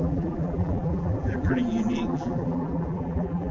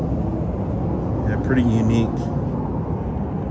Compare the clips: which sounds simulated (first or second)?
first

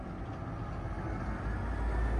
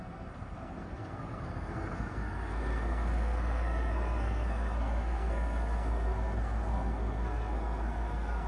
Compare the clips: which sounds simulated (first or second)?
second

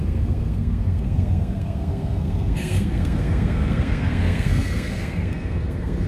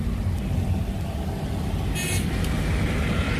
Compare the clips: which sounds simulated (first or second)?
first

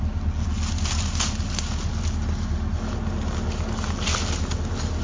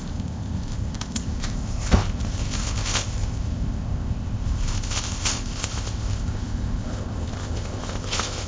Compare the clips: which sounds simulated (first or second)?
second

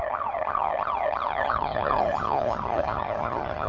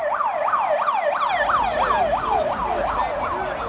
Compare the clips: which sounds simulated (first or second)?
first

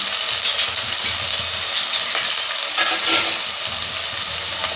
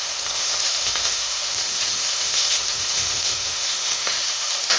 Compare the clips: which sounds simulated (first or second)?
second